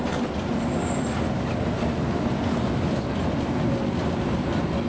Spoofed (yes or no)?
no